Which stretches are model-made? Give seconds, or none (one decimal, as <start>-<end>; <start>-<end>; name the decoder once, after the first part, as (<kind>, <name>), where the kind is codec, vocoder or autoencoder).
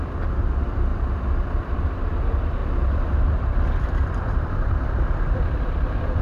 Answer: 0.0-0.9 (vocoder, BigVGAN v2); 1.6-2.6; 3.3-6.2